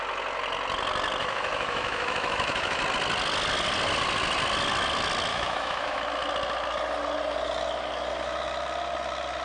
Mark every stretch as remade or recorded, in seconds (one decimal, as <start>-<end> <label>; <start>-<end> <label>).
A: 0.0-1.2 recorded; 1.2-2.8 remade; 2.8-5.3 recorded; 5.3-6.0 remade; 6.0-9.4 recorded